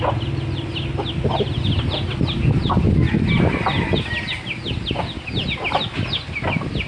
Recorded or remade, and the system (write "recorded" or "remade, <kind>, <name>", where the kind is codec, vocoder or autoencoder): recorded